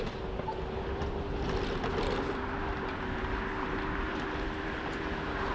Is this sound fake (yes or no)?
no